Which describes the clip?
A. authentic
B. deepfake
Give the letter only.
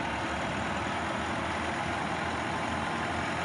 A